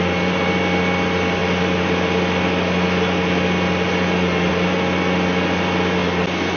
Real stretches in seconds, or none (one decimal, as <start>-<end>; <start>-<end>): 0.0-6.6